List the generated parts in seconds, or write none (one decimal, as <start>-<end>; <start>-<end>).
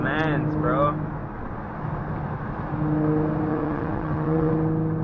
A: 3.5-4.5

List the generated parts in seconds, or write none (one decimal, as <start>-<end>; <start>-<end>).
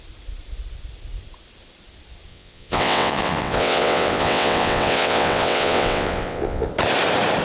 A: 2.3-6.7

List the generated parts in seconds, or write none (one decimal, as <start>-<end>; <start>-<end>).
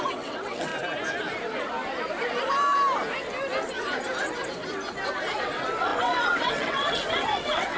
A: 0.0-0.7; 5.4-7.8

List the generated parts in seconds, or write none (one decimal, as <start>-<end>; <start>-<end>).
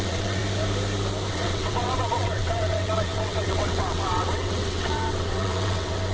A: 0.0-0.4; 1.3-6.1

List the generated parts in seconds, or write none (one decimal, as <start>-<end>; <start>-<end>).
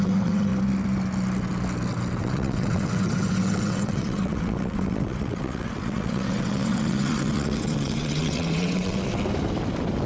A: 0.0-0.5; 2.2-9.0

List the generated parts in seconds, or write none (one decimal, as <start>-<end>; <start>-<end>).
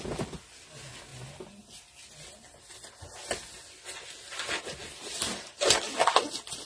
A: none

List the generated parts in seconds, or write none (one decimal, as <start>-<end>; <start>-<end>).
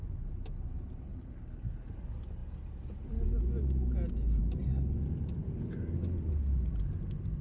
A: none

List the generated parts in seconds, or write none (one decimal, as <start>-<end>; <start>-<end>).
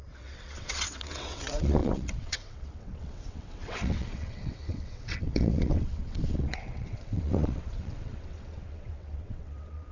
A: 0.0-9.9